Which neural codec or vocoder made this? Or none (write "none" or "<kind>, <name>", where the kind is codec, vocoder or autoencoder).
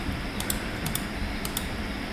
none